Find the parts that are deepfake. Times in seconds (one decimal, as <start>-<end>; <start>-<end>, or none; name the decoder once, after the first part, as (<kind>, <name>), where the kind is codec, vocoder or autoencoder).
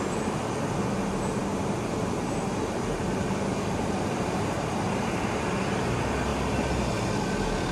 1.4-5.3 (vocoder, BigVGAN v2)